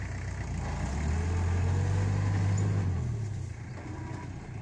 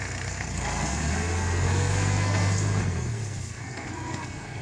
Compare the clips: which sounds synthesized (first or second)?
second